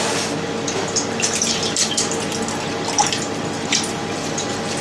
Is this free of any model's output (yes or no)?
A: yes